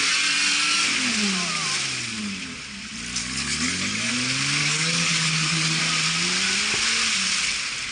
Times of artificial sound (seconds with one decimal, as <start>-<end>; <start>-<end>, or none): 3.2-4.1; 4.6-5.8